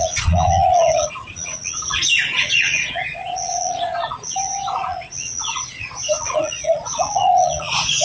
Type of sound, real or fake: fake